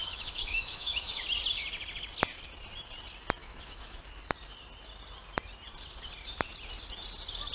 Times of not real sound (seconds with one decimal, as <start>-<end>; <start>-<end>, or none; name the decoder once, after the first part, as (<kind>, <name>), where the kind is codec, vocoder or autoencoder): 0.0-1.2 (autoencoder, DAC-VAE); 3.4-4.0